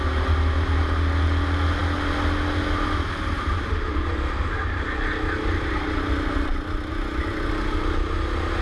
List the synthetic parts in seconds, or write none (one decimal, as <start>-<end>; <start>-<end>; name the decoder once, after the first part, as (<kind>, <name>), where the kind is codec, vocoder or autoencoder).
6.9-7.5 (vocoder, Vocos)